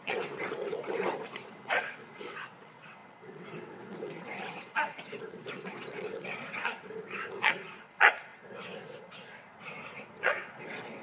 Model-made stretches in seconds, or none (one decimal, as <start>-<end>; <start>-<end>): 0.0-11.0